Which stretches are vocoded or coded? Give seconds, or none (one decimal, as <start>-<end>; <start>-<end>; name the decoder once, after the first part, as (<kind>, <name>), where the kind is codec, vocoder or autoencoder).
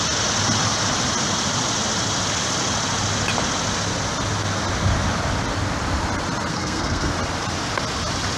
6.5-7.1 (codec, SNAC)